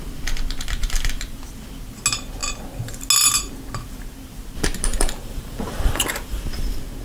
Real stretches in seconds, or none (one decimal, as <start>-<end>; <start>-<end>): 0.0-4.9; 6.4-7.0

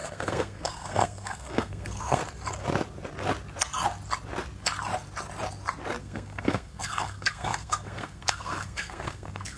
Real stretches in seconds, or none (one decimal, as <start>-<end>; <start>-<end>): 2.2-6.0

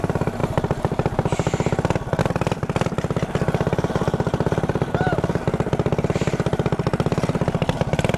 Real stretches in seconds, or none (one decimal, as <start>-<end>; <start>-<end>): 0.0-8.2

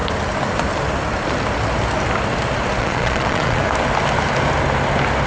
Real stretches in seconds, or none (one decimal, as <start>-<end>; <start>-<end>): 0.0-2.8; 3.6-5.3

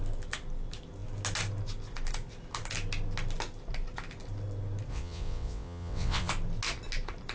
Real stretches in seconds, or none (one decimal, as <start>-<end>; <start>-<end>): 0.0-4.9; 6.3-7.3

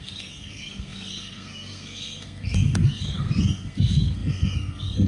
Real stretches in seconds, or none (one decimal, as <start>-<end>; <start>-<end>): none